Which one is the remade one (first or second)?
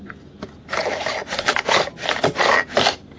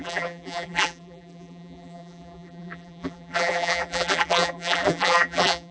second